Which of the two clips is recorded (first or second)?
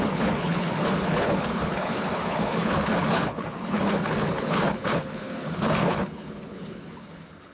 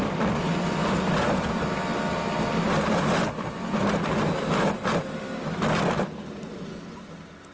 second